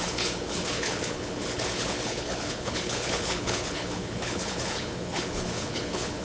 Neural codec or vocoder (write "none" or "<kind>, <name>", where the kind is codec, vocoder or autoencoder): codec, HILCodec